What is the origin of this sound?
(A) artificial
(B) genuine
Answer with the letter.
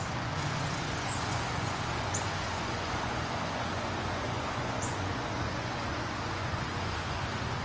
A